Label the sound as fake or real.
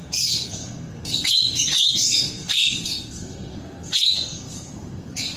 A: fake